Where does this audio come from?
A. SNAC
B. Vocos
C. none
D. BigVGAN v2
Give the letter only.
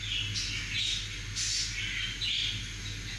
C